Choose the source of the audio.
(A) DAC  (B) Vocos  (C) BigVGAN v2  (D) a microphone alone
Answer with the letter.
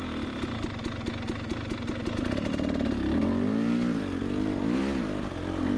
D